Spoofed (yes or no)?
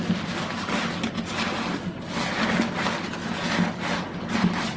no